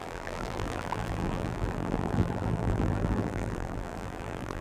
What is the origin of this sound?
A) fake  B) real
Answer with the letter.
A